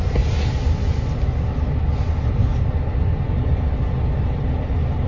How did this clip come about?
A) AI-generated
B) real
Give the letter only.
B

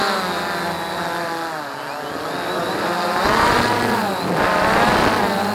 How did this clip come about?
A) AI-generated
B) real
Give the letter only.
B